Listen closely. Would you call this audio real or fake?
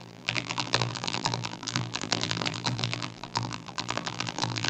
fake